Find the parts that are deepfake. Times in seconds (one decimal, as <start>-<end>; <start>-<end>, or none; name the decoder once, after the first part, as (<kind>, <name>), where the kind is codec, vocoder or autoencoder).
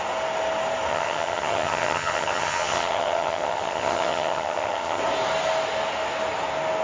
0.9-5.0 (vocoder, HiFi-GAN)